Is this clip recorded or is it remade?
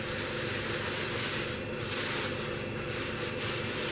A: recorded